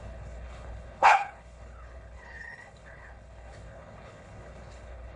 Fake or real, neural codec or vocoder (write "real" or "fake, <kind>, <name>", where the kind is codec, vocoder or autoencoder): fake, codec, HILCodec